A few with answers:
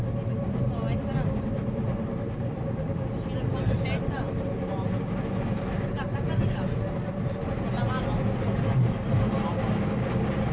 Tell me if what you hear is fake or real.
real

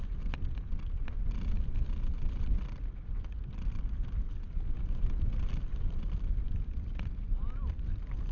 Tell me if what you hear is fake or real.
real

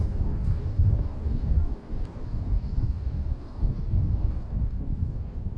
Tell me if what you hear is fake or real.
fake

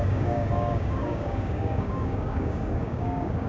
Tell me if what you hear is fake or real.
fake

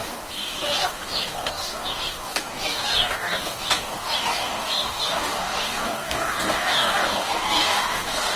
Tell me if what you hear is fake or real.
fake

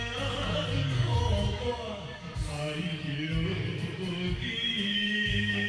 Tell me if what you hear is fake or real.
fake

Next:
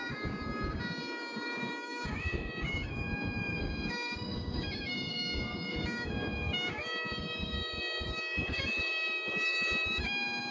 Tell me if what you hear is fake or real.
fake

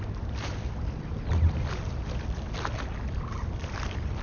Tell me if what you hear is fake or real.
real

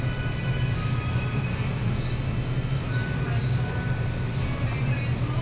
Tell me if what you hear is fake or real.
real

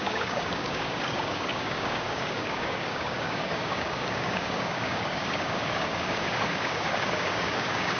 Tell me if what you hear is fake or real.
fake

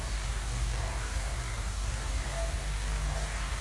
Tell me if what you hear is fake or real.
fake